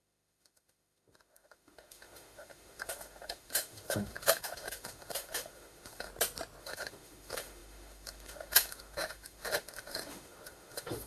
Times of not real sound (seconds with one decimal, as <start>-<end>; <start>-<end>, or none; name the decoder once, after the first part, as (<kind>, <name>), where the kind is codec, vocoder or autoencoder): 0.0-6.1 (autoencoder, DAC-VAE); 6.6-11.1